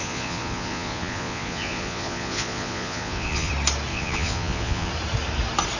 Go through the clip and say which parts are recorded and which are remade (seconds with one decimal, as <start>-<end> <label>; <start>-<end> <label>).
0.0-3.5 remade; 3.5-3.9 recorded; 3.9-4.9 remade; 4.9-5.8 recorded